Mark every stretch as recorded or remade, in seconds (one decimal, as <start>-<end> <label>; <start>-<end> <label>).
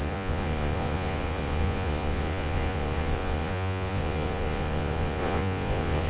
0.0-6.1 remade